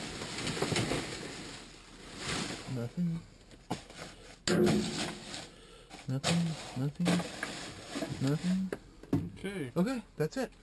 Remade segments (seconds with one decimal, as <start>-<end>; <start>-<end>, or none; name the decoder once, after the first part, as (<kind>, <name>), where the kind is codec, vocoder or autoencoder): none